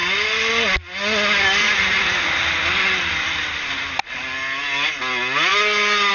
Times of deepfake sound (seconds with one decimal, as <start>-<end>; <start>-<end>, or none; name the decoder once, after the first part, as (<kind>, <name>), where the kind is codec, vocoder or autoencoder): 1.6-2.3 (vocoder, Vocos)